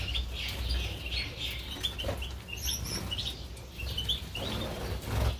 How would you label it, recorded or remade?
recorded